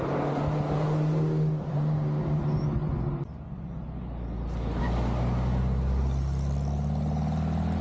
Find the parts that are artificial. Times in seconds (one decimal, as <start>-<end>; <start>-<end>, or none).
none